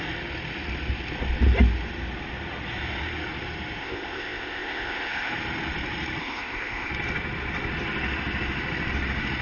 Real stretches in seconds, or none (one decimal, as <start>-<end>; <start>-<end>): 0.0-3.8; 5.3-6.2; 6.9-9.4